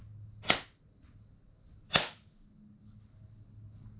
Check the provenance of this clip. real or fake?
real